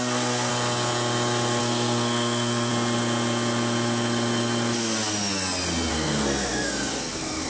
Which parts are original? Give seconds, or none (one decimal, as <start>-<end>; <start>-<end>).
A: 0.5-1.6; 2.7-5.9